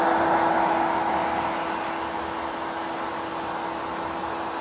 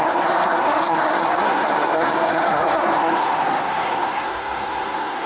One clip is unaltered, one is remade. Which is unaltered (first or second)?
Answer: first